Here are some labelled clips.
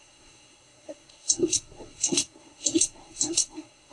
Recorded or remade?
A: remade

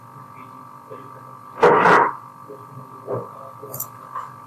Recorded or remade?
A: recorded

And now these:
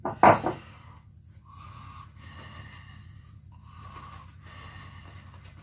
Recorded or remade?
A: recorded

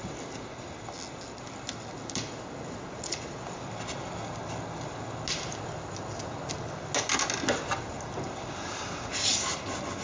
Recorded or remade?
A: recorded